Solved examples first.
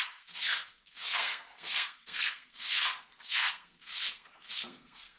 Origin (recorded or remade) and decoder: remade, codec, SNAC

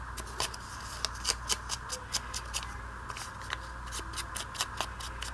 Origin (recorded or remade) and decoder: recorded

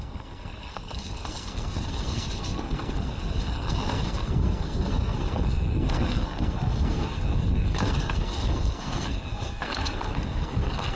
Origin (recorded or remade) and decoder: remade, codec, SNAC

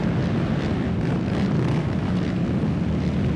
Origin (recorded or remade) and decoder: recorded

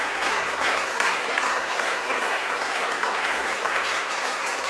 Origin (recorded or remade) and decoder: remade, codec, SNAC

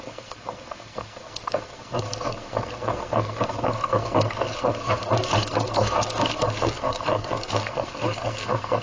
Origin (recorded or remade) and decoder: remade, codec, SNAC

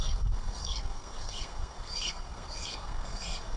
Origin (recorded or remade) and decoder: remade, codec, SNAC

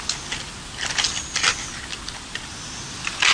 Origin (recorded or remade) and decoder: recorded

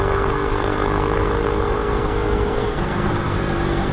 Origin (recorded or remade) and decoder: remade, codec, SNAC